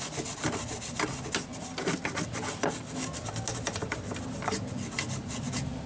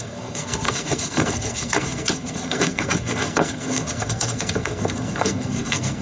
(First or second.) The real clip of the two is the first